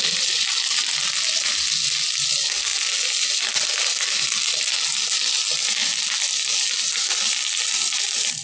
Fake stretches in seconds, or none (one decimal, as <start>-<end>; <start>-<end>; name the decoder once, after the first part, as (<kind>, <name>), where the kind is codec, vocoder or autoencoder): none